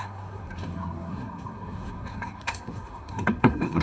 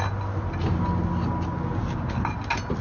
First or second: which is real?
second